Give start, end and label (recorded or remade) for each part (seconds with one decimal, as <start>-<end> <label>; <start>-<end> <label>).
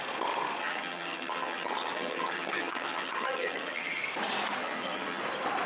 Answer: 0.0-0.6 recorded; 0.6-4.0 remade; 4.0-4.6 recorded; 4.6-5.2 remade; 5.2-5.7 recorded